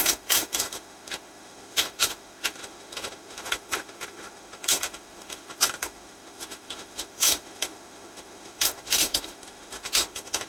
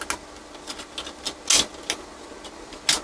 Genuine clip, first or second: second